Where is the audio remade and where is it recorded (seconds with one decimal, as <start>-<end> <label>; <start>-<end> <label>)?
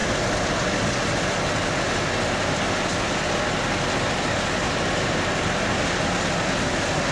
0.0-7.1 recorded